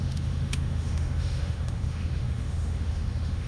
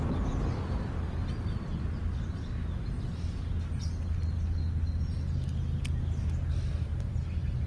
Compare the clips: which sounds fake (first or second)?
first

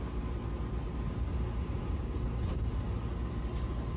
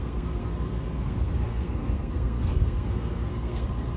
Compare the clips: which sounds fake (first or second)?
second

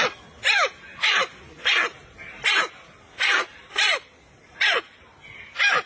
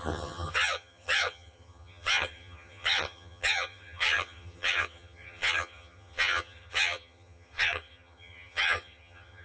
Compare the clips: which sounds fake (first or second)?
second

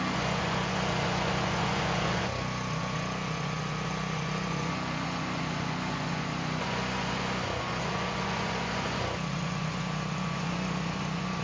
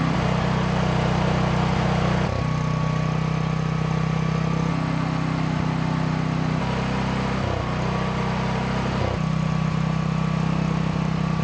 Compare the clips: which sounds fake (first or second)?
first